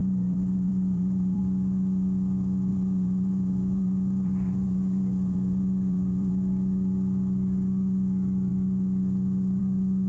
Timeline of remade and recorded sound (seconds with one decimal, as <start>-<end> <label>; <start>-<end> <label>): 0.0-1.4 remade; 1.4-2.7 recorded; 2.7-6.3 remade; 6.3-10.1 recorded